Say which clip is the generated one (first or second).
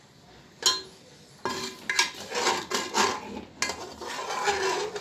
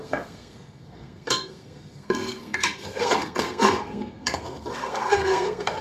second